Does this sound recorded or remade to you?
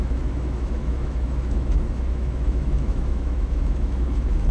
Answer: remade